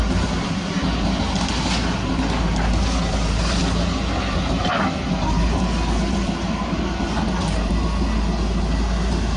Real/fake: real